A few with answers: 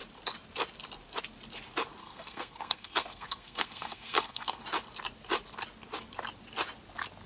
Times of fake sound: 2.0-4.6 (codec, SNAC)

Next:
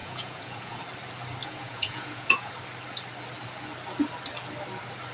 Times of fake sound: 0.0-0.8 (vocoder, Vocos); 1.4-2.5

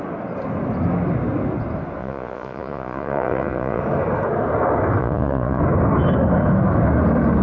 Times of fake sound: 2.0-3.8 (vocoder, Vocos); 5.0-5.6

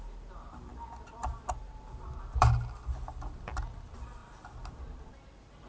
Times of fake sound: 0.0-4.2 (vocoder, BigVGAN v2); 5.1-5.7

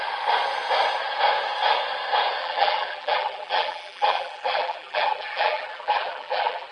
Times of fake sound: 2.4-6.7 (vocoder, BigVGAN v2)

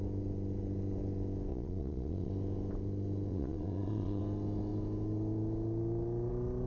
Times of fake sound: 1.5-2.3 (vocoder, Vocos); 3.3-4.2

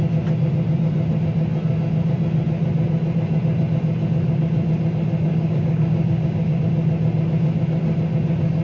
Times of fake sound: 5.3-6.6 (codec, DAC)